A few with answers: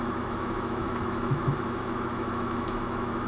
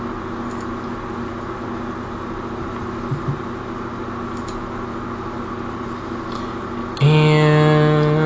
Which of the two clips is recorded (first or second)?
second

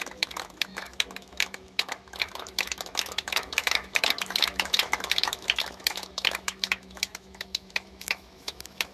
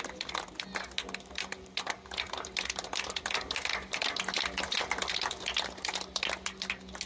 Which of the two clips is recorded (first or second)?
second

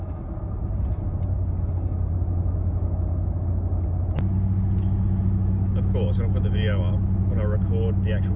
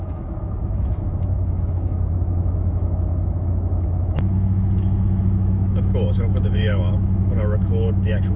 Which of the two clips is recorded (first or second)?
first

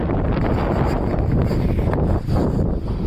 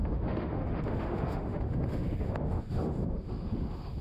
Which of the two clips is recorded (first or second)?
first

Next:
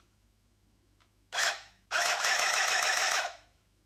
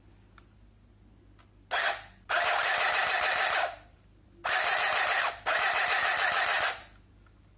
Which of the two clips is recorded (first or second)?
second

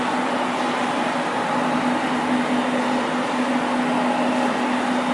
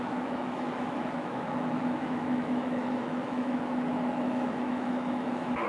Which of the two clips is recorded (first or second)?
first